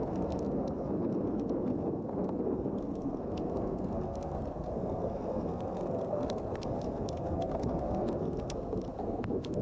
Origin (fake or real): fake